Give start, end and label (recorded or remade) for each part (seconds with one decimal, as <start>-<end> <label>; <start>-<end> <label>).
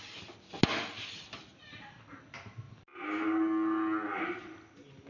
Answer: 0.0-1.5 recorded; 1.5-2.0 remade; 2.0-5.1 recorded